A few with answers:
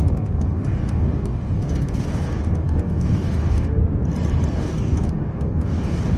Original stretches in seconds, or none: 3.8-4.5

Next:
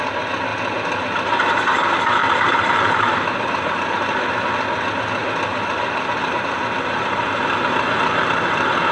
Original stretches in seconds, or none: 0.0-2.2; 4.3-8.9

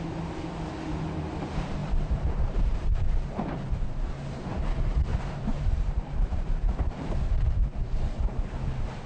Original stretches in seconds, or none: 0.0-1.8; 4.1-5.1; 8.3-9.1

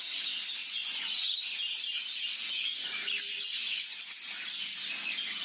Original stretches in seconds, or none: 0.0-0.6; 1.5-5.4